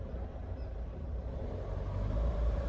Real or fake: fake